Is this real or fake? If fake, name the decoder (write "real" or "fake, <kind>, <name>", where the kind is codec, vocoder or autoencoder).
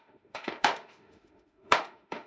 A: fake, autoencoder, DAC-VAE